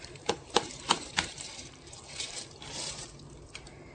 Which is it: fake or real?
fake